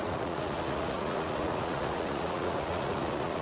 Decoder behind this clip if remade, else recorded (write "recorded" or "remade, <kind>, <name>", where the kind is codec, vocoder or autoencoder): remade, vocoder, Vocos